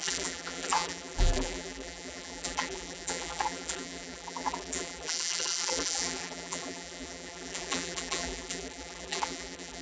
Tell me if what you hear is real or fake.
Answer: fake